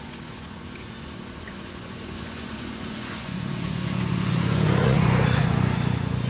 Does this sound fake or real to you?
fake